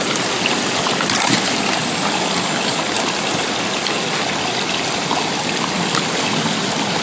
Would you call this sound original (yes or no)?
yes